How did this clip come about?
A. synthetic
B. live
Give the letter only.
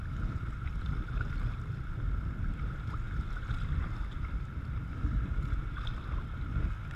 B